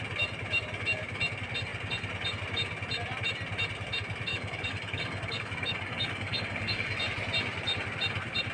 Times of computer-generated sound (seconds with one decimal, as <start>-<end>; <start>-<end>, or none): 4.3-7.0